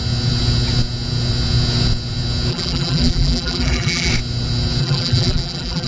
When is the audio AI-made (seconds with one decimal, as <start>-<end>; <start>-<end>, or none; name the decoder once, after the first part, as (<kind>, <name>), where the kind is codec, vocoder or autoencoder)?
2.5-4.1 (vocoder, BigVGAN v2); 4.8-5.9